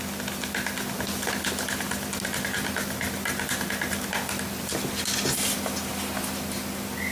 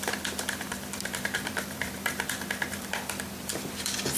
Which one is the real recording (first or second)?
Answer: first